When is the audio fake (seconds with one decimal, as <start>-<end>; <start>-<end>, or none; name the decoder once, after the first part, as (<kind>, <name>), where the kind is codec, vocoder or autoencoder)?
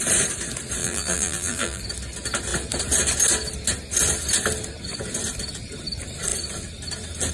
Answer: 0.8-1.8 (vocoder, BigVGAN v2)